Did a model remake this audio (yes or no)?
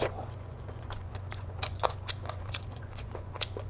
yes